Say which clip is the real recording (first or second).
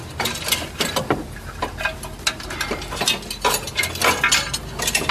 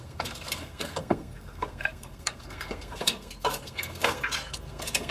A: first